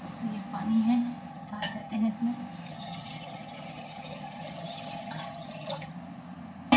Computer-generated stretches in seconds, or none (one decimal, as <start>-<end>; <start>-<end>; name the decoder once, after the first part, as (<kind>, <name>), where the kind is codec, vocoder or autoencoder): 1.3-2.1 (vocoder, HiFi-GAN); 2.7-5.9